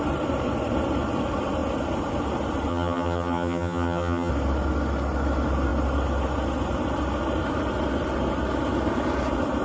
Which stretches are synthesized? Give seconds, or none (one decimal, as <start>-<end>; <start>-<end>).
2.7-4.3